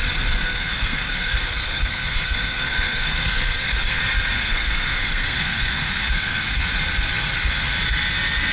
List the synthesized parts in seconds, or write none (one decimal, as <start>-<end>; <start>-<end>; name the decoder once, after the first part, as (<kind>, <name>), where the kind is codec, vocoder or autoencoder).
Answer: 0.4-4.0 (codec, SNAC); 4.4-6.7